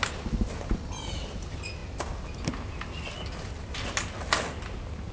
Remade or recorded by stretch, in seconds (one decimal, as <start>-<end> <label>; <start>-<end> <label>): 0.0-5.1 recorded